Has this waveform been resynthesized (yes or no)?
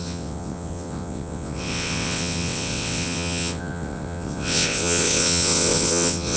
yes